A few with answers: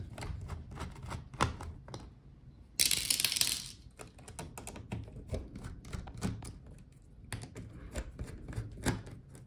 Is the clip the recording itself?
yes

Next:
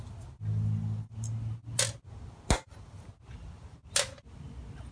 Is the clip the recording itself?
yes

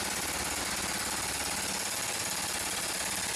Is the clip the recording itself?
yes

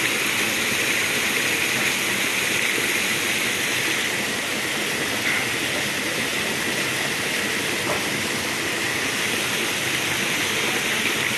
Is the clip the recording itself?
yes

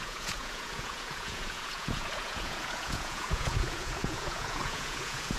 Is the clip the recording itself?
no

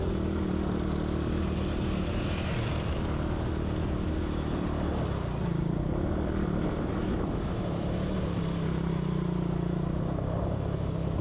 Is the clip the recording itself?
yes